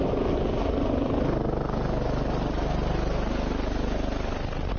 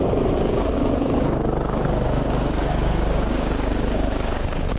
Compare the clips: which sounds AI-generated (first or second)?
second